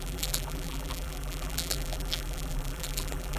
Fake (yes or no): yes